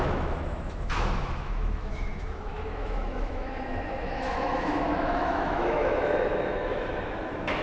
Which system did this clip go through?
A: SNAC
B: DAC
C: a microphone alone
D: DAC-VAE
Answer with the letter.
D